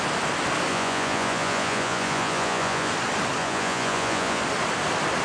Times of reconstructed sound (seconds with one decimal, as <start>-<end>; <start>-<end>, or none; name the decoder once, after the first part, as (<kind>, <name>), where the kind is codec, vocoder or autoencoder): 0.7-2.9 (vocoder, Vocos); 3.4-4.4